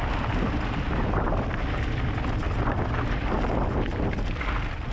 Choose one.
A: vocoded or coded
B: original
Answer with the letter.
B